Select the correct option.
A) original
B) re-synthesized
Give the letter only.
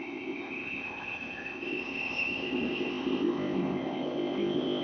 B